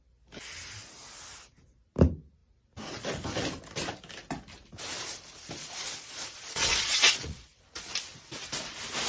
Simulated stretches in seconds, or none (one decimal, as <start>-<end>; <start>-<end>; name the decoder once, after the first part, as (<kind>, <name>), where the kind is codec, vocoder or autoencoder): 5.6-7.6 (vocoder, Vocos)